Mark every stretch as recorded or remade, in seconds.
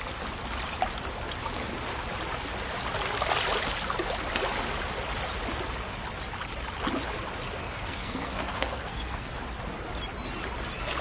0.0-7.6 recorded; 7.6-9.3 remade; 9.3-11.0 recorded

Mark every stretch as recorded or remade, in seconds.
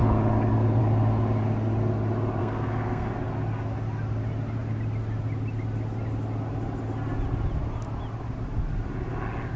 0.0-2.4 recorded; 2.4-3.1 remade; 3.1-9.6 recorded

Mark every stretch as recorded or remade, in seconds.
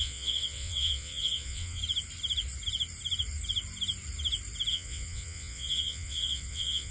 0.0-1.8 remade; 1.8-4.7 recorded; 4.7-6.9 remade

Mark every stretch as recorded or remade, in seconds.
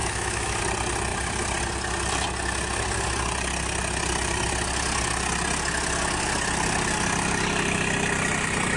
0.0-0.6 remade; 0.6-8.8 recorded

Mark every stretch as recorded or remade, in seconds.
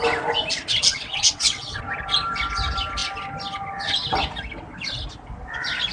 0.0-0.9 recorded; 0.9-1.8 remade; 1.8-5.9 recorded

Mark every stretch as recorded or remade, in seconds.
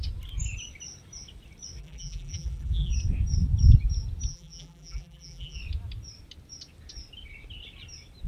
0.0-1.8 recorded; 1.8-2.9 remade; 2.9-4.3 recorded; 4.3-5.6 remade; 5.6-8.3 recorded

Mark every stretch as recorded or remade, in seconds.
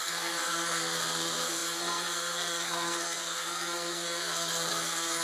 0.0-5.2 remade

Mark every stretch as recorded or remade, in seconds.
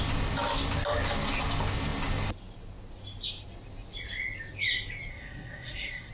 0.0-5.1 recorded; 5.1-6.1 remade